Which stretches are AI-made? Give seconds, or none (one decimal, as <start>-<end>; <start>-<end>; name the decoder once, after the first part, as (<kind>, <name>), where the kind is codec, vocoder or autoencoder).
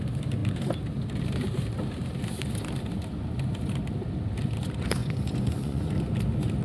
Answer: 5.0-5.9 (vocoder, Vocos)